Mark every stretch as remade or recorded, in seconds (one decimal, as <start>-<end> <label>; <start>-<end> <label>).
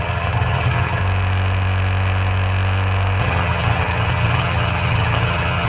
0.0-1.0 remade; 1.0-3.2 recorded; 3.2-5.7 remade